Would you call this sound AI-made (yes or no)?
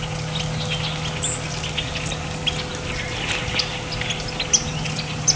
no